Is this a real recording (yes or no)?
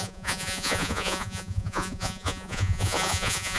no